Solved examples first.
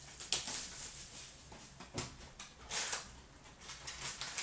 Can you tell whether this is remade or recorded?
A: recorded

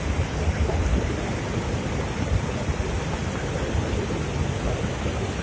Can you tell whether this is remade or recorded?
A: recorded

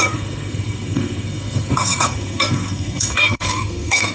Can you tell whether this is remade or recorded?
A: remade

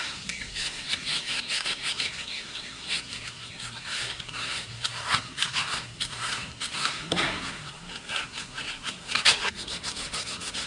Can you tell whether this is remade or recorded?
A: remade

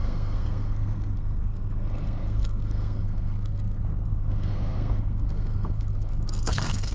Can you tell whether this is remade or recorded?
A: remade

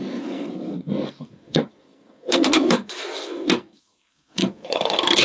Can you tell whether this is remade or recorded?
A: remade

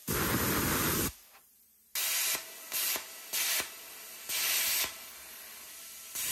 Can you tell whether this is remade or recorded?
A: recorded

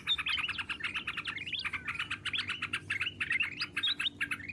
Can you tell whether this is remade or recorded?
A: recorded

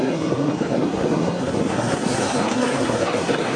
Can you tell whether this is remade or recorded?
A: remade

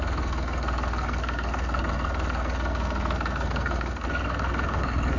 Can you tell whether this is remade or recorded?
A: remade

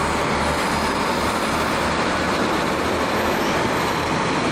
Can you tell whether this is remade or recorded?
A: recorded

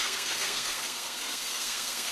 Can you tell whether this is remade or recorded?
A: remade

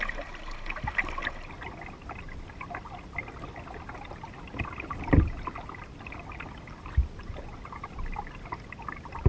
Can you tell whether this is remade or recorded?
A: recorded